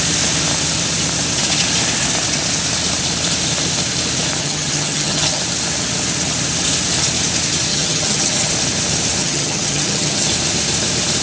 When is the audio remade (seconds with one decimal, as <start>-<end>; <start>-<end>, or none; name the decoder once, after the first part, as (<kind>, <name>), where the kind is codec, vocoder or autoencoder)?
4.4-5.4 (vocoder, HiFi-GAN); 7.7-8.5; 9.2-10.3